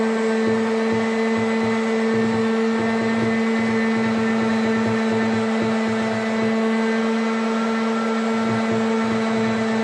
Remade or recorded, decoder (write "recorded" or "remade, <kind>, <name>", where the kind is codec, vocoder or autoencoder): recorded